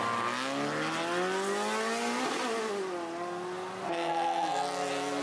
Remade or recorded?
recorded